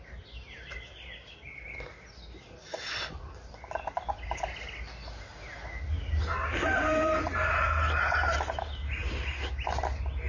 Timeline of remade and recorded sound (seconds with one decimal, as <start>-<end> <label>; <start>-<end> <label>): 0.0-10.3 recorded